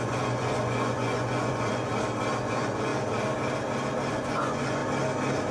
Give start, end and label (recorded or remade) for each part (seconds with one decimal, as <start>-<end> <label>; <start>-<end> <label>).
0.0-1.9 remade; 1.9-2.4 recorded; 2.4-2.9 remade; 2.9-4.1 recorded; 4.1-4.8 remade; 4.8-5.5 recorded